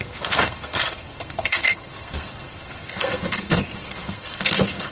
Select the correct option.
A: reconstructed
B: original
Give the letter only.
A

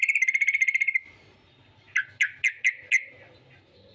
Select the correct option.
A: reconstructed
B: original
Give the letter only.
B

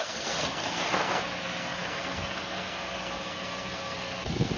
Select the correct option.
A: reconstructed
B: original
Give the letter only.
A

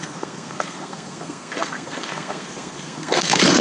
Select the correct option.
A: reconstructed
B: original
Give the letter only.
A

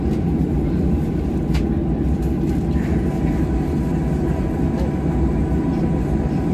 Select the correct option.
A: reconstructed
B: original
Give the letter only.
B